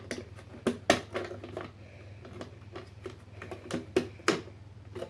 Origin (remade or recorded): recorded